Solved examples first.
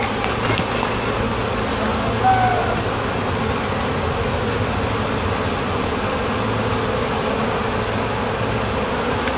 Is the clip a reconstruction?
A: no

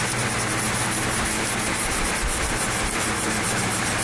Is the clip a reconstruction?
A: no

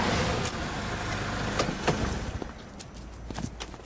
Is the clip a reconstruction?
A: no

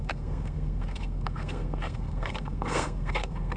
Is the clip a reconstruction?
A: yes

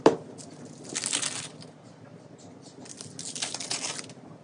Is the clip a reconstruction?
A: no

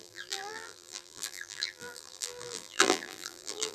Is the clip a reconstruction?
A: yes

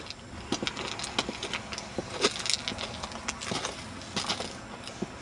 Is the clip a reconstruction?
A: no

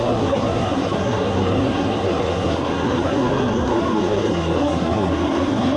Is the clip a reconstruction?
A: yes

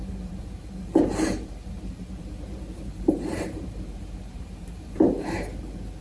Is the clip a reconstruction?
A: yes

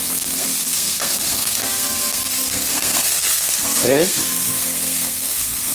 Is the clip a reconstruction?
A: yes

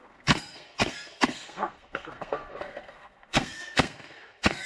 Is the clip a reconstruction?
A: yes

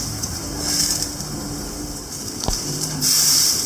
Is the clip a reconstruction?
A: yes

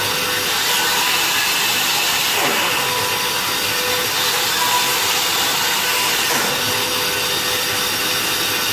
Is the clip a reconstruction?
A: no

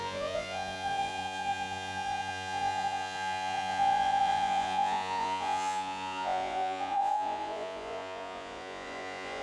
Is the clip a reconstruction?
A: yes